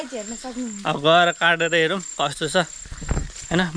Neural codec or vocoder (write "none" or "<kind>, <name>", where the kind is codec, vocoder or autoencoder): none